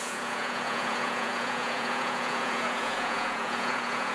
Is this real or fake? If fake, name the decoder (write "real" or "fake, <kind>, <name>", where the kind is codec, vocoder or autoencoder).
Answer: fake, vocoder, Vocos